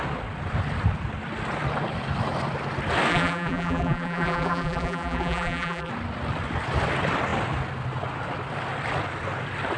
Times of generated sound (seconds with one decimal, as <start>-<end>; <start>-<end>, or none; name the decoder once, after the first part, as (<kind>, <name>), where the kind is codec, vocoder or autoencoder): 3.1-5.9 (vocoder, BigVGAN v2)